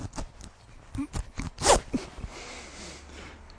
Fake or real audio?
real